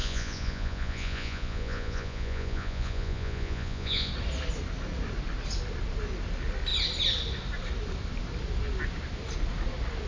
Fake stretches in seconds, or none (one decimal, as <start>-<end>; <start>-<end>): 0.0-4.1